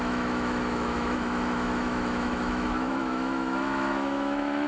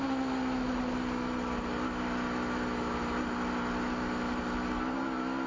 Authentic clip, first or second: second